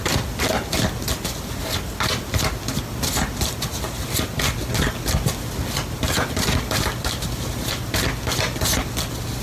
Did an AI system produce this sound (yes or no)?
no